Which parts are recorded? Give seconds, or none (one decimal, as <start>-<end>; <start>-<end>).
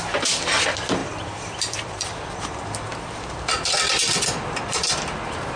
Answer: 0.0-1.0; 2.3-2.9; 4.5-5.6